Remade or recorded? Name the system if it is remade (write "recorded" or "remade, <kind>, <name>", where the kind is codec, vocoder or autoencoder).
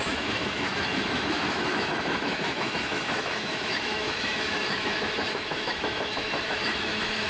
remade, autoencoder, DAC-VAE